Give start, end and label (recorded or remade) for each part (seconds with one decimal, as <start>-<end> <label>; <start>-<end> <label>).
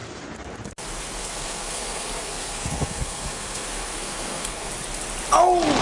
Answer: 0.0-1.2 recorded; 1.2-4.7 remade; 4.7-5.8 recorded